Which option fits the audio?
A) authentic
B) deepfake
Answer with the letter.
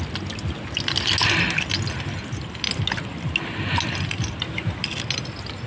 A